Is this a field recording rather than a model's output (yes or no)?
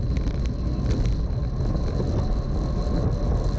yes